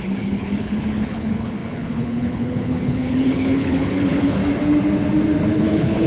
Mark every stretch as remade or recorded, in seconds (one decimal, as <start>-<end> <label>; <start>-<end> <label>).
0.0-4.4 remade; 4.4-5.5 recorded; 5.5-6.1 remade